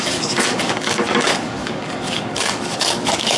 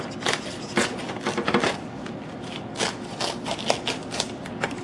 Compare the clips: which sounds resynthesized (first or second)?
first